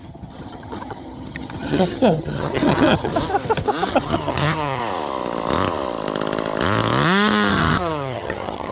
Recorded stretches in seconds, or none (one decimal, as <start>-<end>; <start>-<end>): 3.1-3.9; 4.8-7.5